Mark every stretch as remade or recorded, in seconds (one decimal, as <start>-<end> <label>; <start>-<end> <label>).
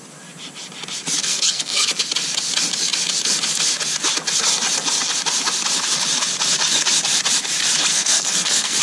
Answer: 0.0-1.2 recorded; 1.2-1.9 remade; 1.9-7.9 recorded; 7.9-8.8 remade